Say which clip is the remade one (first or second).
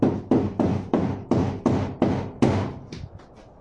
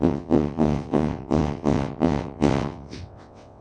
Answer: second